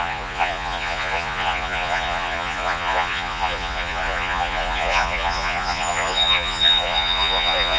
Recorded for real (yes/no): no